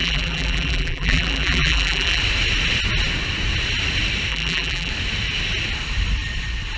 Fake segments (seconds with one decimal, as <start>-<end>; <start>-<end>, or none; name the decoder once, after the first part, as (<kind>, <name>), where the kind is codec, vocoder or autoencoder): 0.0-2.2 (vocoder, BigVGAN v2); 4.3-4.9